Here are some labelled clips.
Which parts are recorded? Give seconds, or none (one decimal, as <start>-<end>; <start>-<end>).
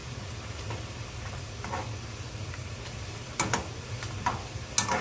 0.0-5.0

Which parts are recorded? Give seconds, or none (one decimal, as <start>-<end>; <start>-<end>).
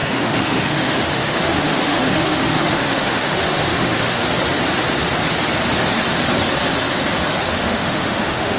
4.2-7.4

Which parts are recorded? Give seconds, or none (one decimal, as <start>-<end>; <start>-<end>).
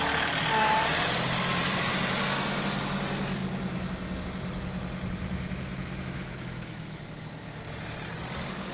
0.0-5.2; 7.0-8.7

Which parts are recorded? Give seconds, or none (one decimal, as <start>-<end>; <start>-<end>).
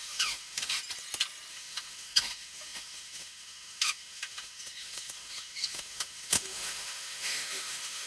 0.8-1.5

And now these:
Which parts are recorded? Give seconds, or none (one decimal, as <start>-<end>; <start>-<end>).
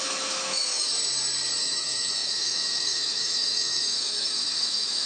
0.9-1.6